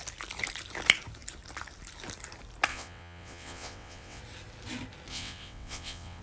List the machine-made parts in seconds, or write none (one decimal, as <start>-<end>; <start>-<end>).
2.7-4.2; 5.1-6.2